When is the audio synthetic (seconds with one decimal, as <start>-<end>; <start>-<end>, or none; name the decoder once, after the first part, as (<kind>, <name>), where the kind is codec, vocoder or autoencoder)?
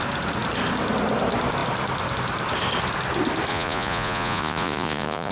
3.5-5.3 (vocoder, Vocos)